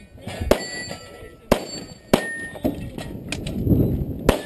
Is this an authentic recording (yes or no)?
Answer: yes